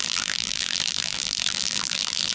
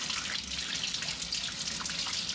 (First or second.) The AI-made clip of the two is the first